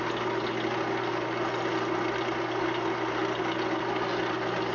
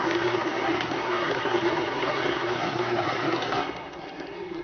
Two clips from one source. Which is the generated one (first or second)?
second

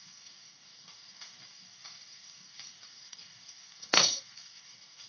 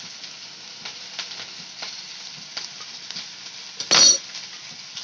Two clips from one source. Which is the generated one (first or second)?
first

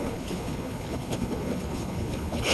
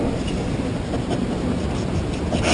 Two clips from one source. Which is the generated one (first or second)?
first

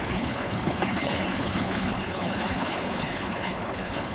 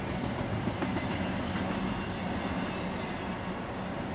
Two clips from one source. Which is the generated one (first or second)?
first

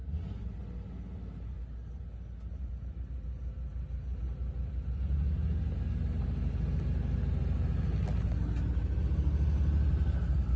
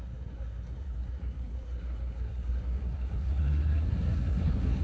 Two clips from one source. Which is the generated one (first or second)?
second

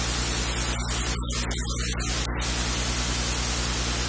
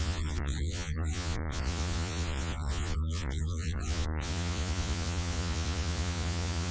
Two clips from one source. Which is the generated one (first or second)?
second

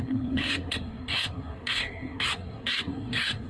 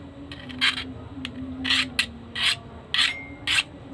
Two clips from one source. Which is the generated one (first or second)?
first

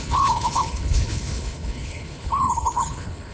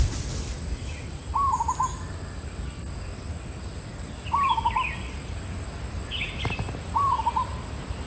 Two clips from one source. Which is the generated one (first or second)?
first